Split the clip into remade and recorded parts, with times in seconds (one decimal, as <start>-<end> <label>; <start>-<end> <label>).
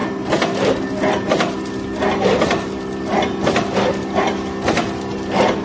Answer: 0.0-5.6 recorded